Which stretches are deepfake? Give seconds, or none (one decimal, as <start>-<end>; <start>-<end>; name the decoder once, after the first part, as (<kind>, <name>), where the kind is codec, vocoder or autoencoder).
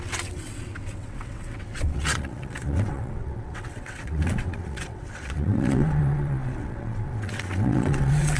0.0-8.4 (vocoder, WaveNeXt)